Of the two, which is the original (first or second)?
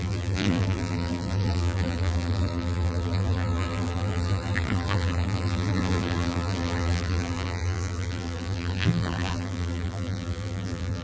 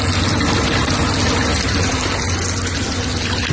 second